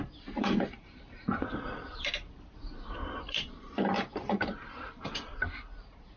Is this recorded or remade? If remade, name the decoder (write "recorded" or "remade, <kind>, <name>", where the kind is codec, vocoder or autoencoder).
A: remade, vocoder, BigVGAN v2